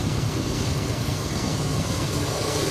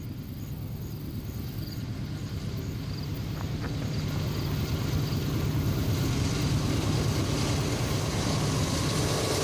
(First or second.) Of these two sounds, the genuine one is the second